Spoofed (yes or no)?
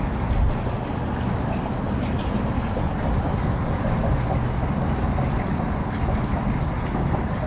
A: no